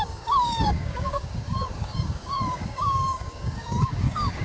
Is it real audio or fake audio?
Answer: fake